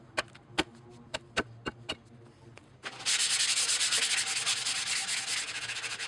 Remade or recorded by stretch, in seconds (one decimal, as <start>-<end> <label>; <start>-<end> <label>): 0.0-6.1 recorded